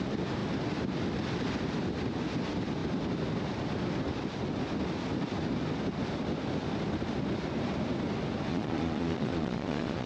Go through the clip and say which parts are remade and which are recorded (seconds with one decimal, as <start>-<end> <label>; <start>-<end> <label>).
0.0-8.5 recorded; 8.5-10.1 remade